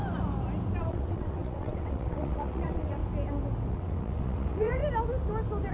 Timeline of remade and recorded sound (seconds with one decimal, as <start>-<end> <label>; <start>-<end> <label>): 0.0-0.8 recorded; 0.8-3.0 remade; 3.0-3.7 recorded; 3.7-4.8 remade; 4.8-5.7 recorded